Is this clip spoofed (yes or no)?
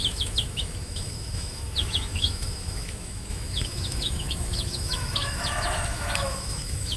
yes